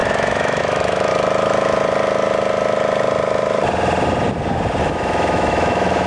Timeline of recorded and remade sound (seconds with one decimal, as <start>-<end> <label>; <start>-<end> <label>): 0.0-1.1 remade; 1.1-4.8 recorded; 4.8-6.1 remade